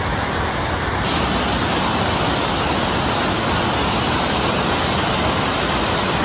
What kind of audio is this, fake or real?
real